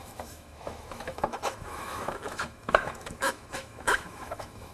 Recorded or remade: remade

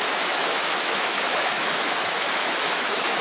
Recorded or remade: remade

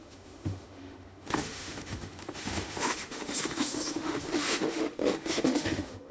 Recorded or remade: remade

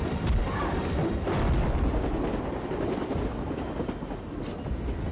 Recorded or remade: recorded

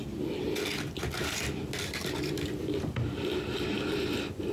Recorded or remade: recorded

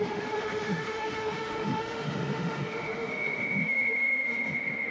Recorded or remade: remade